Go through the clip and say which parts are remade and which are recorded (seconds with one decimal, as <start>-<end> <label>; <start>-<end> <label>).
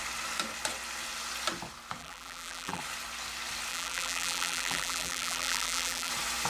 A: 0.0-2.0 recorded; 2.0-2.8 remade; 2.8-3.7 recorded; 3.7-6.1 remade; 6.1-6.5 recorded